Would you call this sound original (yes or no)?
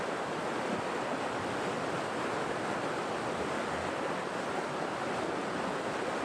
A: yes